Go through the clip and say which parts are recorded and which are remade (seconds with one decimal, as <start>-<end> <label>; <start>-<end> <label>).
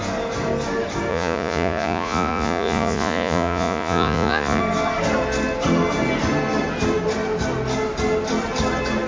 0.0-1.1 recorded; 1.1-4.6 remade; 4.6-9.1 recorded